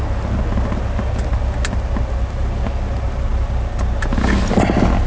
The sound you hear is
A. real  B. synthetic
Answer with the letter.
A